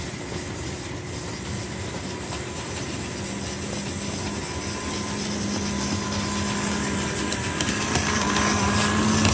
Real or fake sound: real